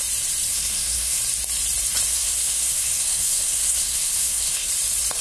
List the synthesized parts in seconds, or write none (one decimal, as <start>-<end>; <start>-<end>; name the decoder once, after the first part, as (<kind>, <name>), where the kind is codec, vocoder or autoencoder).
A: 0.5-1.2 (codec, SNAC); 2.1-4.7